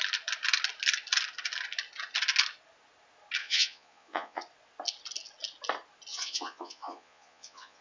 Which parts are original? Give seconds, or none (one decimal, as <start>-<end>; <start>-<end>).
0.0-3.4; 4.4-6.1